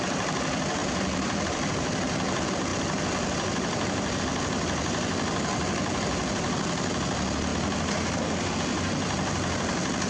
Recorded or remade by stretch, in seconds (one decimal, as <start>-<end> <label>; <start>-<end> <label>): 0.0-0.8 recorded; 0.8-1.7 remade; 1.7-2.7 recorded; 2.7-4.2 remade; 4.2-7.5 recorded; 7.5-8.5 remade; 8.5-10.1 recorded